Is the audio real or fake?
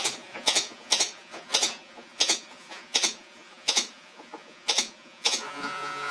fake